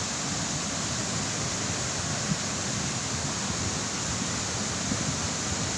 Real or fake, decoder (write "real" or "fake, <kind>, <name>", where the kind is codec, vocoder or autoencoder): real